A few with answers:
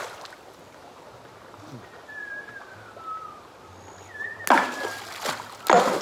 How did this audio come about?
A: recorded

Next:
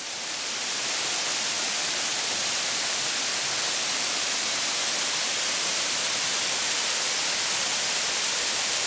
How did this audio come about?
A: recorded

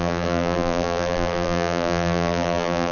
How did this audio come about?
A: remade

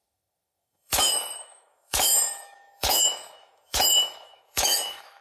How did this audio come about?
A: remade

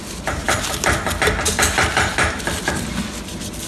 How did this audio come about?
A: recorded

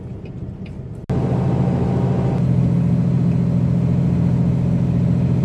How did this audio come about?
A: recorded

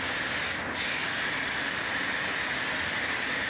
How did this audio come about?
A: recorded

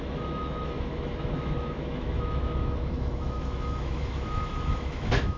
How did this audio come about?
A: remade